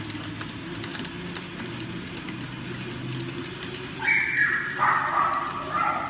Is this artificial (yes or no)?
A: no